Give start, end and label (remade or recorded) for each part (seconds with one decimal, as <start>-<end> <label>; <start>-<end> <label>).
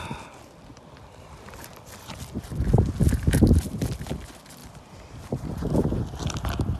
0.0-6.8 recorded